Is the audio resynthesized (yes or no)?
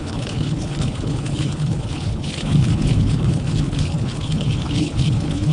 yes